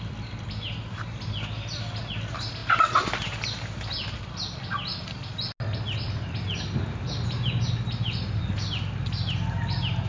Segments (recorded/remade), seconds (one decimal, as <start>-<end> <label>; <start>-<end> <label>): 0.0-10.1 recorded